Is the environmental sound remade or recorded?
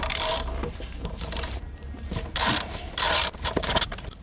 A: remade